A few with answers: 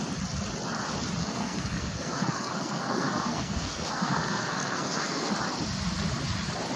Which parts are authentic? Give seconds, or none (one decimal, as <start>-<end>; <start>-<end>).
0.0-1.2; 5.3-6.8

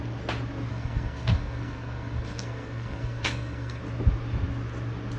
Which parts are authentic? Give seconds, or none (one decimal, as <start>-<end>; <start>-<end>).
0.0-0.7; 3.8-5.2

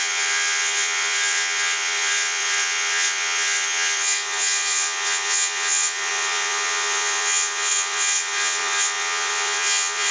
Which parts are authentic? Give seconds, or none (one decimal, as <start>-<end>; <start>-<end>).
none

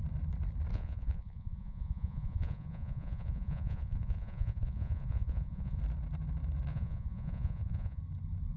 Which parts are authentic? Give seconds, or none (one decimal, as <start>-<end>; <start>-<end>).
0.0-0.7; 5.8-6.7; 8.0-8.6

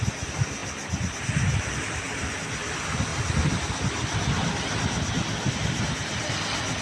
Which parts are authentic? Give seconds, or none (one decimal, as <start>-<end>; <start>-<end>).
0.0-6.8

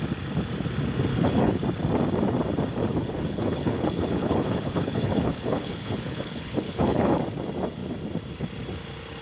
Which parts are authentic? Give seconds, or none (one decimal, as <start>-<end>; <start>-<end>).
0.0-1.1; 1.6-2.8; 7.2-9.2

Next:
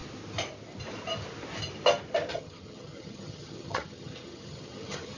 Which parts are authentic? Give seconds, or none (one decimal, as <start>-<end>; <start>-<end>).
0.0-2.3